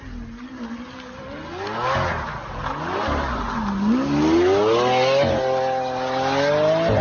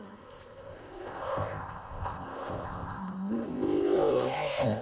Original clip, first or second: first